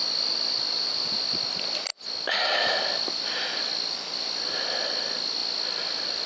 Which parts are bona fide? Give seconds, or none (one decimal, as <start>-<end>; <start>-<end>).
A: 0.0-6.3